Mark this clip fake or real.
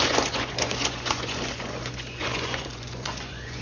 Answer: fake